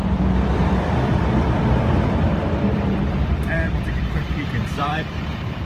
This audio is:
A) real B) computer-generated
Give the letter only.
B